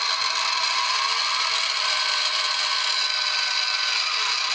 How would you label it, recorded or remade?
recorded